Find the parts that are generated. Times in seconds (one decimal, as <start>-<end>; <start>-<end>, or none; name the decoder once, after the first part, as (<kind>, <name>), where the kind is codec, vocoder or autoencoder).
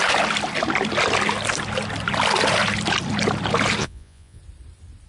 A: 3.8-4.4 (vocoder, Vocos)